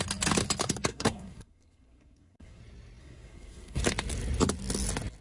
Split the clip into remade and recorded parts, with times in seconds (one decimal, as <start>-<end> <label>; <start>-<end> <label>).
0.0-0.9 recorded; 0.9-2.6 remade; 2.6-3.0 recorded; 3.0-3.8 remade; 3.8-5.2 recorded

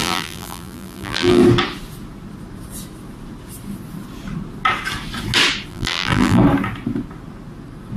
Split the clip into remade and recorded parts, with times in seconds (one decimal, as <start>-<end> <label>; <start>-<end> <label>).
0.0-1.4 remade; 1.4-5.7 recorded; 5.7-6.4 remade; 6.4-8.0 recorded

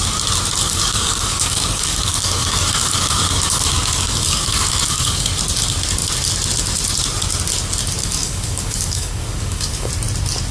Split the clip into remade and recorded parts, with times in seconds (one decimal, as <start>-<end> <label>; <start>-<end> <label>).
0.0-0.6 recorded; 0.6-5.3 remade; 5.3-8.0 recorded; 8.0-9.9 remade; 9.9-10.5 recorded

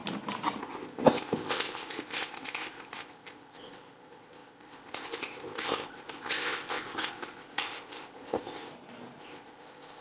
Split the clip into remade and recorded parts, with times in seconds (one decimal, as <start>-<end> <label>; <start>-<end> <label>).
0.0-0.6 recorded; 0.6-8.7 remade; 8.7-9.2 recorded; 9.2-10.0 remade